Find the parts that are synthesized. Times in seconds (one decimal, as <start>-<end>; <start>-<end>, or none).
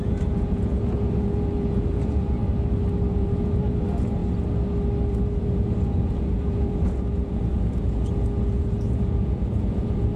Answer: 0.0-2.4; 3.1-4.2; 5.1-10.2